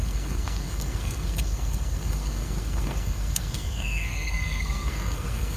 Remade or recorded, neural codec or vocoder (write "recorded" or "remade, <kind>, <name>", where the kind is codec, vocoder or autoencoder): remade, codec, SNAC